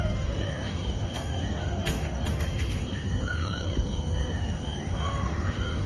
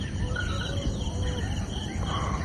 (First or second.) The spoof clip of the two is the first